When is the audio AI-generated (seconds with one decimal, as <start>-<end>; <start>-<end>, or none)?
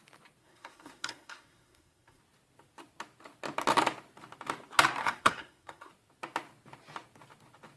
0.4-2.2; 5.0-5.9